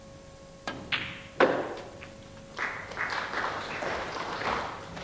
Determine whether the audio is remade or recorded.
recorded